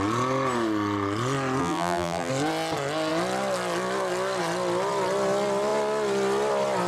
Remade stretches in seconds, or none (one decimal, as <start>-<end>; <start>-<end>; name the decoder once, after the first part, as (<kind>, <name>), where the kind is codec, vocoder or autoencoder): 1.6-2.3 (vocoder, BigVGAN v2)

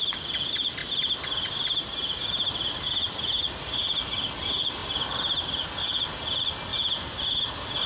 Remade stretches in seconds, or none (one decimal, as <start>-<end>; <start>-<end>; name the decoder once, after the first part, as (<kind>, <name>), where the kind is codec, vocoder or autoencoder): 0.8-3.4 (vocoder, BigVGAN v2); 4.8-5.7; 6.7-7.4

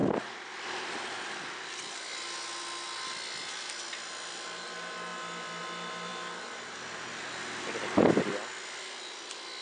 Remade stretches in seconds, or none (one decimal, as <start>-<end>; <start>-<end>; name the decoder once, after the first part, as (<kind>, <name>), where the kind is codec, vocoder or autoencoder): 0.0-1.7 (vocoder, BigVGAN v2); 5.1-5.6

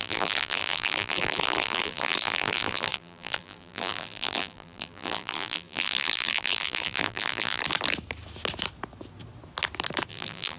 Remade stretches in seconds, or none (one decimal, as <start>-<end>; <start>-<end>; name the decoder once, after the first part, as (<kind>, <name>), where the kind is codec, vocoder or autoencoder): 0.0-7.6 (vocoder, BigVGAN v2); 10.1-10.6

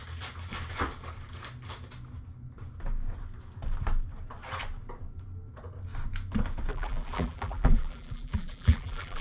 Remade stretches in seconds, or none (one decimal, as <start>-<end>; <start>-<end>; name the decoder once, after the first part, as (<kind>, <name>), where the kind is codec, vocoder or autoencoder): 6.7-9.2 (vocoder, BigVGAN v2)

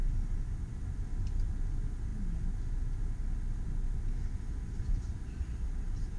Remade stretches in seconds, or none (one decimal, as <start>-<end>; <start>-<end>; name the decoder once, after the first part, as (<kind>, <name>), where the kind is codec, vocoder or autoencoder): none

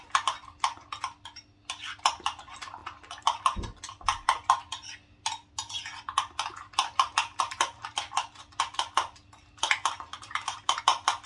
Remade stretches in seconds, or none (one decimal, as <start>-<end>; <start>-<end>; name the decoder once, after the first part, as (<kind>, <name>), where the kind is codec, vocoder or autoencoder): 10.1-10.8 (vocoder, BigVGAN v2)